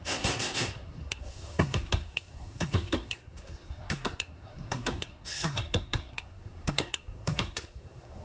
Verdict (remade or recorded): remade